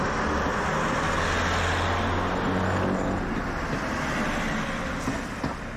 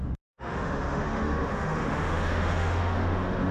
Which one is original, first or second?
first